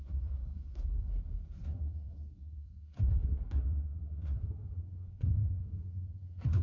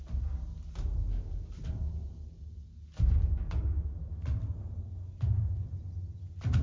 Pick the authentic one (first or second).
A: second